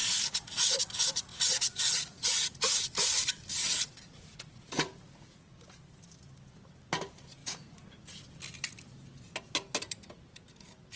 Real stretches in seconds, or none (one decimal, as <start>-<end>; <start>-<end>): 0.8-1.3; 2.8-3.6; 5.5-7.4; 8.2-11.0